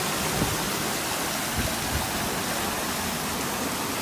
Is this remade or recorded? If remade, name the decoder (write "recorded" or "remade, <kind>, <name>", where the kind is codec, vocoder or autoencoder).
recorded